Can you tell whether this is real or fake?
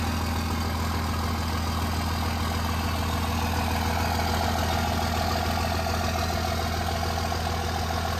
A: real